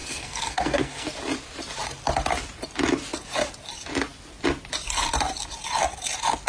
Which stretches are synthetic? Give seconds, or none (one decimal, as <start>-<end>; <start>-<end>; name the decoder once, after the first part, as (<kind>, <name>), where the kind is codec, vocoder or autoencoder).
0.0-1.1 (codec, SNAC)